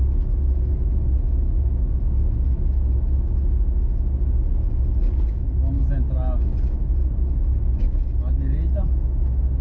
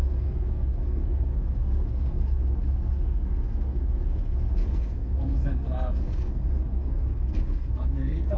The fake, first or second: second